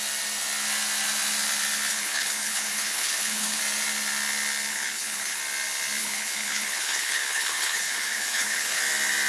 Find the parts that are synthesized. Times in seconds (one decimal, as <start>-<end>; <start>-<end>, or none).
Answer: 1.9-3.6; 4.7-5.4; 6.0-8.8